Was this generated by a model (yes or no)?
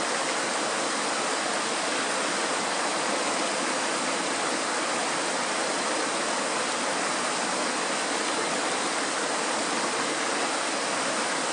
no